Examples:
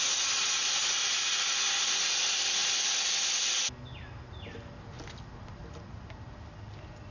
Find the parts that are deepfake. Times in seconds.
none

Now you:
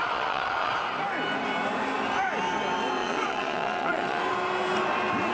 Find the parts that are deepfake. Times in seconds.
0.0-0.7 (vocoder, Vocos); 3.0-4.2

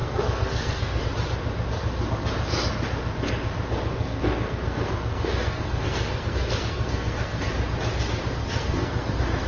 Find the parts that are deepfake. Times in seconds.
0.0-1.0 (codec, SNAC); 3.9-7.5; 8.4-9.1

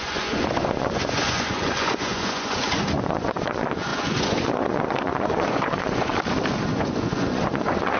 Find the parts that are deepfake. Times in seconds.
0.0-6.1 (vocoder, Vocos); 6.7-8.0

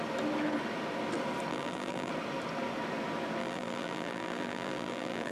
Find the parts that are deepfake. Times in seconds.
1.5-2.1 (vocoder, BigVGAN v2); 3.4-5.3

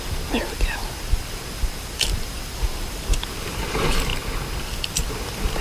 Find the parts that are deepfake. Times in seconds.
0.0-4.1 (vocoder, BigVGAN v2); 4.6-5.6